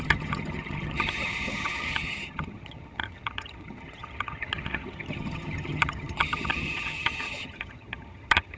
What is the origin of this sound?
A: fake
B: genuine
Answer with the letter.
A